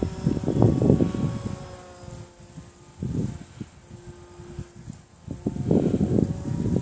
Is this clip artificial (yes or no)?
no